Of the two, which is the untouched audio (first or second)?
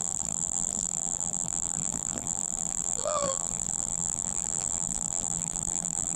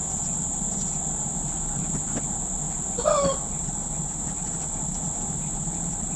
second